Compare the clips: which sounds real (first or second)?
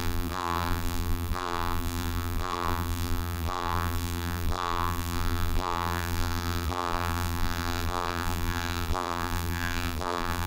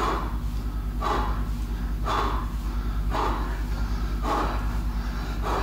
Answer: second